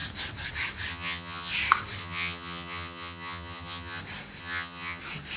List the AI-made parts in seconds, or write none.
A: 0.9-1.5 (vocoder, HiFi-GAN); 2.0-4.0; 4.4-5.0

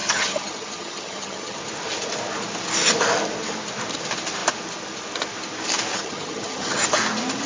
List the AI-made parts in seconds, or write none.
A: 0.0-1.6 (vocoder, HiFi-GAN); 5.9-6.8

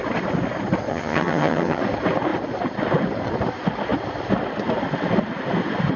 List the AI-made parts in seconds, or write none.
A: 0.9-1.8 (vocoder, HiFi-GAN)

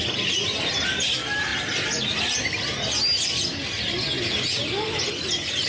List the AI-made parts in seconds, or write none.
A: none

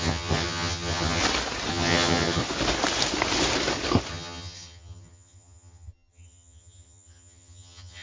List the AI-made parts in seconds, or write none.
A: 0.0-1.2 (vocoder, HiFi-GAN); 1.7-2.4; 4.1-8.0